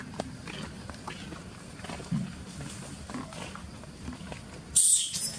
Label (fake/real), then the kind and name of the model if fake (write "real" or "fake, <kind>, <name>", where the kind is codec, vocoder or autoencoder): real